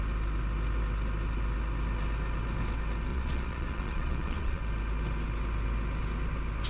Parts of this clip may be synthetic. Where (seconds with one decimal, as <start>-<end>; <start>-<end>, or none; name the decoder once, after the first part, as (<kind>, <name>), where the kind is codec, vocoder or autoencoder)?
3.1-4.6 (vocoder, Vocos)